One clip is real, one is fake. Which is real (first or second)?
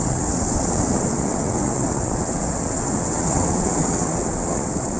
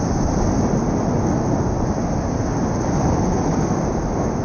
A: second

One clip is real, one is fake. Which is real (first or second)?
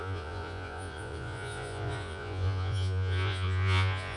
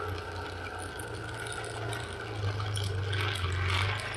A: second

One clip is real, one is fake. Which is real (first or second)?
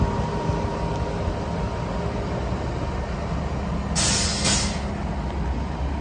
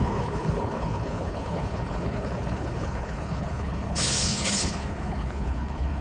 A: first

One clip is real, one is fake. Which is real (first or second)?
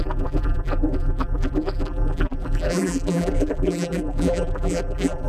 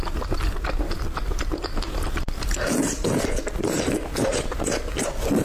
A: second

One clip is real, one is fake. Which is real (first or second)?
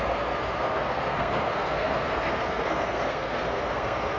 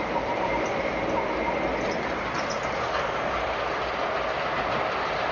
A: second